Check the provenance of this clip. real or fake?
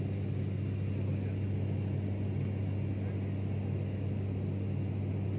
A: real